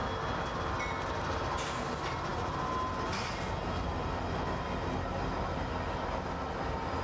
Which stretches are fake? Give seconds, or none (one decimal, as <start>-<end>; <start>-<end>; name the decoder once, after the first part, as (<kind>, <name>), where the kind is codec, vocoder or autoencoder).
none